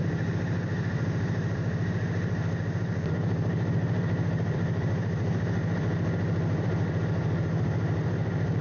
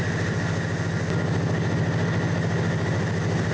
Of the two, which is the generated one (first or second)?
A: first